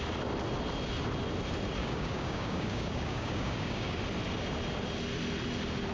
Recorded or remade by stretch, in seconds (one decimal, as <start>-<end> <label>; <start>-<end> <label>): 0.0-1.8 recorded; 1.8-4.0 remade; 4.0-5.9 recorded